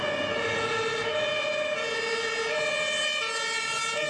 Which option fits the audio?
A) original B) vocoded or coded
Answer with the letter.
A